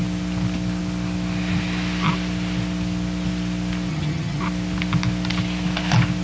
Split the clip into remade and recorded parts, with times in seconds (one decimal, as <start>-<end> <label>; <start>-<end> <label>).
0.0-3.9 recorded; 3.9-4.4 remade; 4.4-6.2 recorded